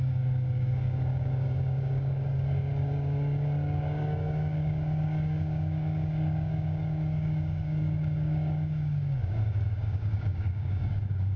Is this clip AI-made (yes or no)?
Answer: yes